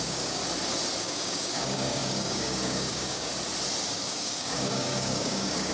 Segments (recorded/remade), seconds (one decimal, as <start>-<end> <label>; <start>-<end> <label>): 0.0-0.4 remade; 0.4-1.0 recorded; 1.0-3.3 remade; 3.3-3.9 recorded; 3.9-5.7 remade